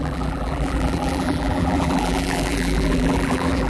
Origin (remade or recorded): remade